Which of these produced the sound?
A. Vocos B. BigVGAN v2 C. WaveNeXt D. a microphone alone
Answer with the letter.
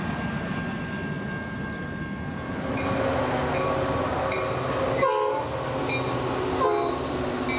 D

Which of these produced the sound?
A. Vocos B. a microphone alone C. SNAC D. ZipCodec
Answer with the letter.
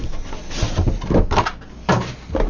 B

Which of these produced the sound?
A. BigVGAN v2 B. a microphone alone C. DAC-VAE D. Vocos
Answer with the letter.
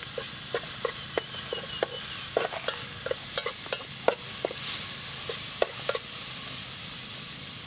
B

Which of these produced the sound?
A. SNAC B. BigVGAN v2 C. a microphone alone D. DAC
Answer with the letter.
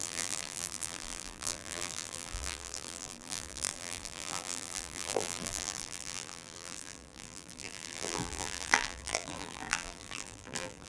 B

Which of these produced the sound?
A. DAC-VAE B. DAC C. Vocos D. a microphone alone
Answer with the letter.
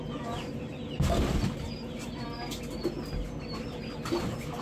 D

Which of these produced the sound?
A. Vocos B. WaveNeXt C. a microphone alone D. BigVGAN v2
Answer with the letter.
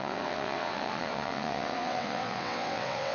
B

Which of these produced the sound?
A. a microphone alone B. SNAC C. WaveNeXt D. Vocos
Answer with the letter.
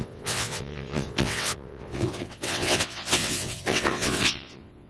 C